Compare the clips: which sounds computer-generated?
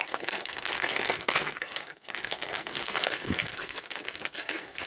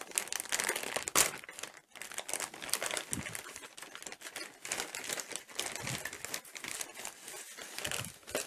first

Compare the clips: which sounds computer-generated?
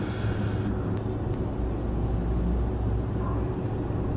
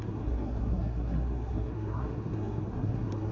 second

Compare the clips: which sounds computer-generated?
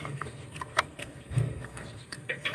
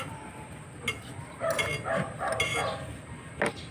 first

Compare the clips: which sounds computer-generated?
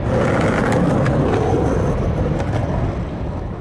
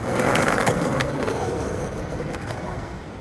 second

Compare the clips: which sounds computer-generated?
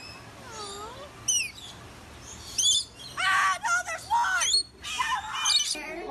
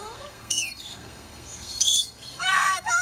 second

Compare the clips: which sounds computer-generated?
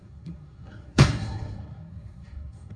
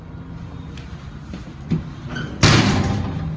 first